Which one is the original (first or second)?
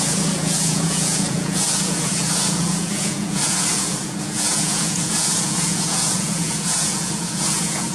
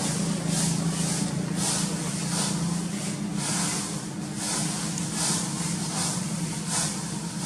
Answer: second